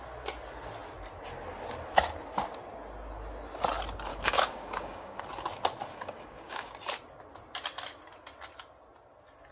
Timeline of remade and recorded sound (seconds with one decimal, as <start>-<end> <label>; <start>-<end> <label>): 0.0-4.1 recorded; 4.1-5.2 remade; 5.2-5.8 recorded; 5.8-6.7 remade; 6.7-9.5 recorded